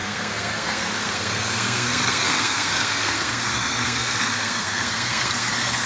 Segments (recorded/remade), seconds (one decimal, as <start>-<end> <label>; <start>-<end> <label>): 0.0-5.9 remade